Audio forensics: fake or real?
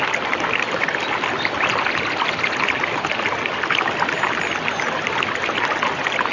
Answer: real